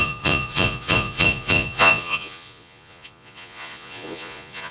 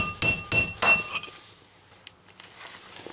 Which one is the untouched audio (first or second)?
second